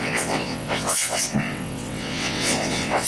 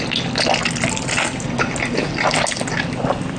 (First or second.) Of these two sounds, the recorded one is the second